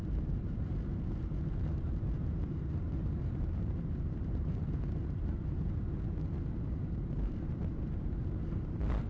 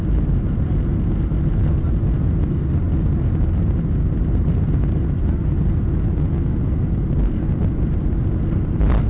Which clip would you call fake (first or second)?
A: first